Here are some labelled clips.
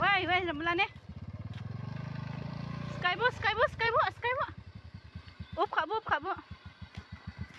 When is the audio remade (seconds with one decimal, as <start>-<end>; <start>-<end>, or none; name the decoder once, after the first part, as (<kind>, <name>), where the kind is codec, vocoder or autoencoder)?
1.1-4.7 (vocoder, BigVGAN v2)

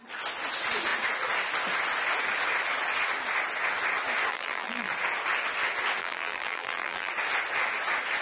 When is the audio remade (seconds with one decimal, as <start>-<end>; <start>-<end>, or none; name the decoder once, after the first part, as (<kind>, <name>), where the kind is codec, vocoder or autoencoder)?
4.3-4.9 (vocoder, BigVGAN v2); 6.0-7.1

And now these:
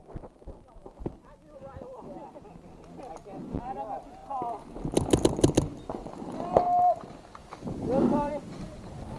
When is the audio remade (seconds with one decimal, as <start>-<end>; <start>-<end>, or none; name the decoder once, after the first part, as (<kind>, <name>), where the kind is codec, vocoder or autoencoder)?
7.4-8.3 (vocoder, BigVGAN v2)

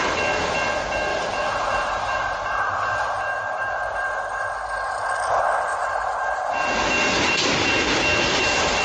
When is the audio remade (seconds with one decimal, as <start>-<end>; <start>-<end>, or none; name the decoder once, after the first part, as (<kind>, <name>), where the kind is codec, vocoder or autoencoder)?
1.1-4.9 (vocoder, BigVGAN v2); 5.7-6.4

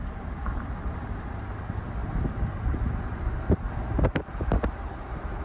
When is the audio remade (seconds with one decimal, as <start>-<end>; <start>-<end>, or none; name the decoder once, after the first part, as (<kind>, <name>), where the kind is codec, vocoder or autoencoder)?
0.0-1.4 (vocoder, BigVGAN v2); 2.0-5.4

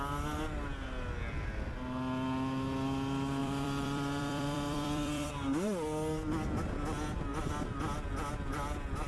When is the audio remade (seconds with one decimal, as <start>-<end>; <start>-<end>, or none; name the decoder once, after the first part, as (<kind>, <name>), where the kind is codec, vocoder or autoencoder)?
3.4-5.3 (vocoder, BigVGAN v2)

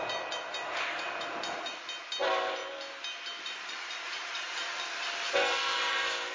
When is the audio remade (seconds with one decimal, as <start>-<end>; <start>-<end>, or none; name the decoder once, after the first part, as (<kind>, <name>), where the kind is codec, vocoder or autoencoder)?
0.0-2.6 (vocoder, BigVGAN v2); 3.4-4.6; 5.5-6.3